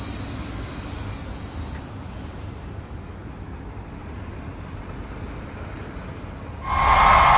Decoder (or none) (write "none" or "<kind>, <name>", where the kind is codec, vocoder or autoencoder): none